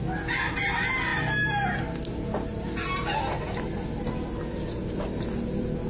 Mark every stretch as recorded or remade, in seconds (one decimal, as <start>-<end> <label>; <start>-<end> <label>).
0.0-5.9 recorded